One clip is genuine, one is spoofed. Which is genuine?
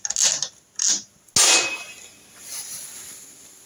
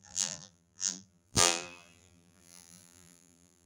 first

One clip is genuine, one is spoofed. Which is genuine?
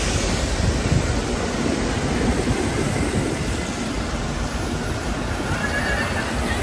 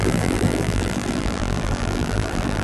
first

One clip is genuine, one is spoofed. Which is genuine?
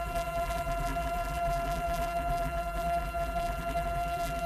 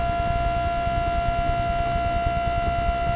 second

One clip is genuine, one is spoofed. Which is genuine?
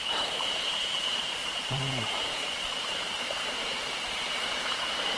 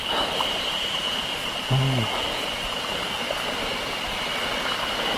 second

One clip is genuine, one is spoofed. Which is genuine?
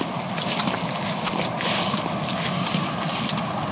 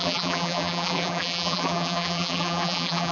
first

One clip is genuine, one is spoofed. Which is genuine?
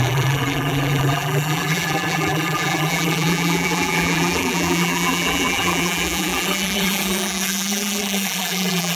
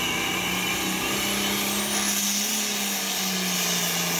second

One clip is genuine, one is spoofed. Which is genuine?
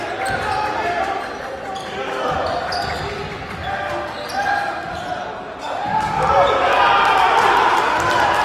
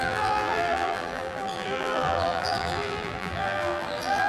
first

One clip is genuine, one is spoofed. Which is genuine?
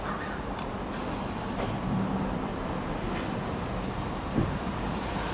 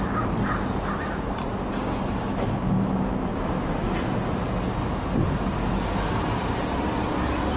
second